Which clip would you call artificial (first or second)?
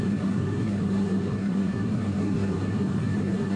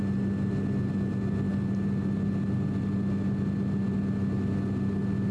first